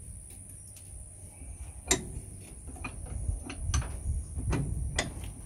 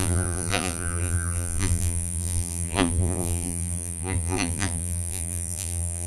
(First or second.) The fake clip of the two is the second